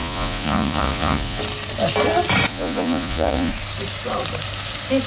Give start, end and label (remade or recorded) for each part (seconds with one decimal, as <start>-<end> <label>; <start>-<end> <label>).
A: 0.0-1.4 remade; 1.4-2.5 recorded; 2.5-3.5 remade; 3.5-5.1 recorded

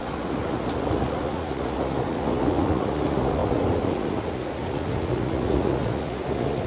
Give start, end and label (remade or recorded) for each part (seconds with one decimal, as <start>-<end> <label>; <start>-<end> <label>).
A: 0.0-6.7 remade

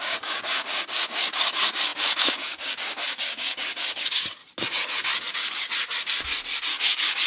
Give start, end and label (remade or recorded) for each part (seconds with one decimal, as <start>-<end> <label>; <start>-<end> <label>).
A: 0.0-4.4 remade; 4.4-5.3 recorded; 5.3-5.7 remade; 5.7-6.7 recorded; 6.7-7.3 remade

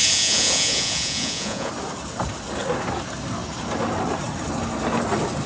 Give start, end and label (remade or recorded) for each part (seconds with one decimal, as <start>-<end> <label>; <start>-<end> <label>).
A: 0.0-1.7 remade; 1.7-5.5 recorded

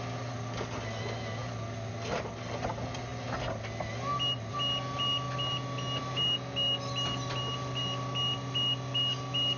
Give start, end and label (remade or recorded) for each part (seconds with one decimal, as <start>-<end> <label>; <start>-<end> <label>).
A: 0.0-9.6 recorded

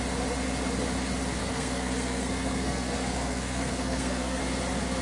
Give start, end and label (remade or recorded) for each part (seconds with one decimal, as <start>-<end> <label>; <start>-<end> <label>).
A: 0.0-1.4 recorded; 1.4-4.4 remade; 4.4-5.0 recorded